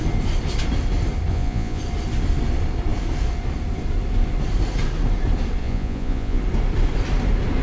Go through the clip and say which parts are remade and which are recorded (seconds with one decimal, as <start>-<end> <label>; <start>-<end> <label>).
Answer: 0.0-1.3 recorded; 1.3-1.8 remade; 1.8-5.6 recorded; 5.6-6.4 remade; 6.4-7.6 recorded